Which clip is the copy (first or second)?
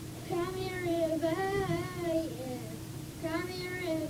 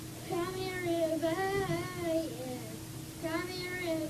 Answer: first